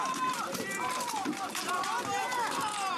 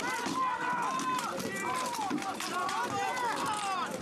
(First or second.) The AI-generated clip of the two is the first